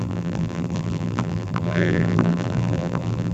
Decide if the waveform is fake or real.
fake